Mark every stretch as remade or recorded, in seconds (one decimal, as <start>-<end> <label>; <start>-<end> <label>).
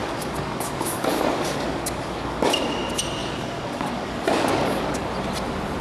0.0-2.6 remade; 2.6-3.2 recorded; 3.2-5.1 remade; 5.1-5.8 recorded